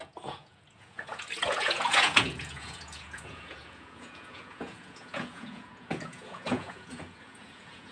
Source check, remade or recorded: remade